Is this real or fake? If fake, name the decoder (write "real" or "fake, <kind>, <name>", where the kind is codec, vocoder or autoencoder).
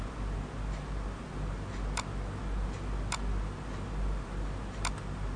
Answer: real